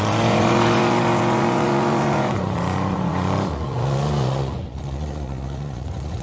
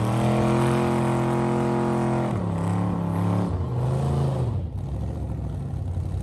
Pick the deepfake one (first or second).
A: first